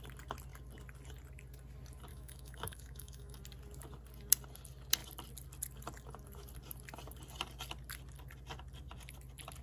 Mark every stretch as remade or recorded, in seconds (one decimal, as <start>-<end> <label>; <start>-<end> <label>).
0.0-2.1 recorded; 2.1-3.4 remade; 3.4-9.6 recorded